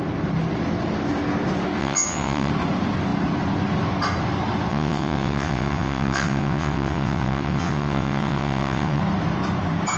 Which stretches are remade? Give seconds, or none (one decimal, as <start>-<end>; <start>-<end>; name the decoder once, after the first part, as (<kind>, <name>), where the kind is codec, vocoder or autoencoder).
1.8-2.5 (vocoder, WaveNeXt); 4.7-9.0

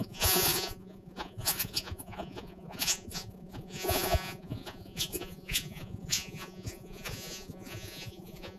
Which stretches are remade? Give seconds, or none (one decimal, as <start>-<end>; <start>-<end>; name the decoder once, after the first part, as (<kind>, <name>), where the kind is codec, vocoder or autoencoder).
0.0-8.6 (vocoder, Vocos)